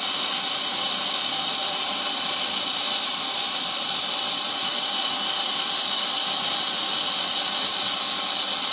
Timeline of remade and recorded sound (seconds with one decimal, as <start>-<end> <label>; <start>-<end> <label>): 0.0-8.7 recorded